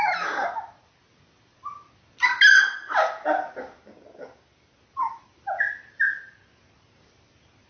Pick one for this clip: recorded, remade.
recorded